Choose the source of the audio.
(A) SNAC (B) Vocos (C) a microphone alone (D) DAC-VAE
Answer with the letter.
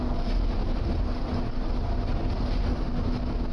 C